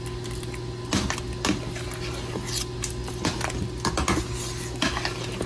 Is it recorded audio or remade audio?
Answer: recorded